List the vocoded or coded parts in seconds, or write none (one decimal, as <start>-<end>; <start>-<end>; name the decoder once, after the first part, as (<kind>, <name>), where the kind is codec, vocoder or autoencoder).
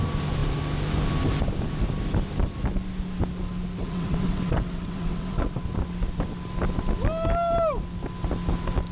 3.8-5.6 (vocoder, WaveNeXt)